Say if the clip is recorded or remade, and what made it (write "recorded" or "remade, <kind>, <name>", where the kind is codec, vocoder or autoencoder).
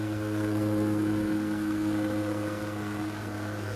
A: remade, codec, SNAC